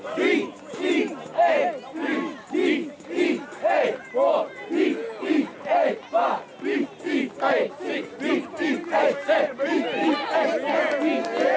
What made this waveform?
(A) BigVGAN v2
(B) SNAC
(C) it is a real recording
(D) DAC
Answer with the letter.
C